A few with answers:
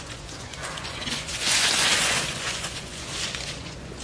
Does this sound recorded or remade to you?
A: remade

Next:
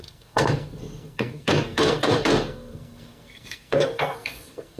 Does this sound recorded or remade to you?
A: remade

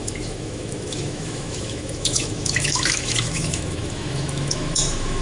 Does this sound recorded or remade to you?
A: remade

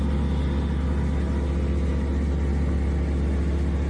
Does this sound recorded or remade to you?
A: recorded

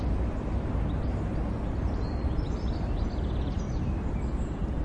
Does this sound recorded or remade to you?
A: recorded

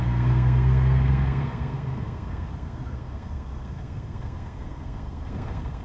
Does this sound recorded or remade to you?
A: remade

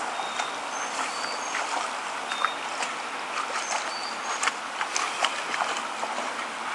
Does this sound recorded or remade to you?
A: recorded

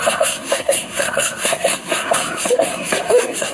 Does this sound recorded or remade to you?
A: remade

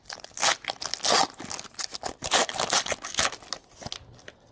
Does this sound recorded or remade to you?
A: recorded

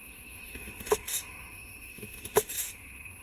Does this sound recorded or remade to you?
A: remade